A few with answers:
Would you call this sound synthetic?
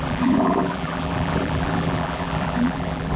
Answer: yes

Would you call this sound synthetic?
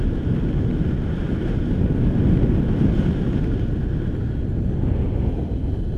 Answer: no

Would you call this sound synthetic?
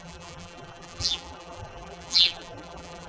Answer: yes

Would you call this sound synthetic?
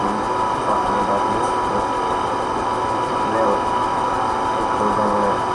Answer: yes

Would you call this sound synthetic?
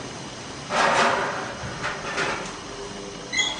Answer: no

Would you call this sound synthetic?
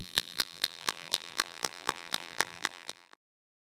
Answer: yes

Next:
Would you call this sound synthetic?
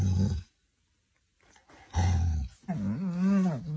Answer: no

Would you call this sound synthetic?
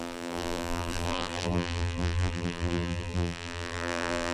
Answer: yes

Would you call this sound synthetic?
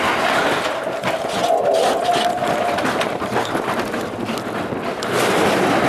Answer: no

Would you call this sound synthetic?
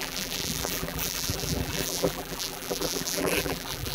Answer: yes